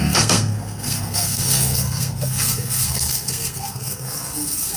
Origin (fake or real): fake